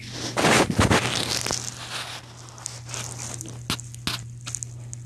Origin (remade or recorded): recorded